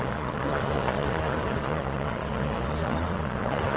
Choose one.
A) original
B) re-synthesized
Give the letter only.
B